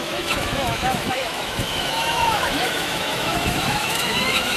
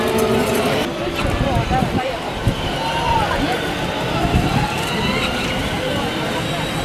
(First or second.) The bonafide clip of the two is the second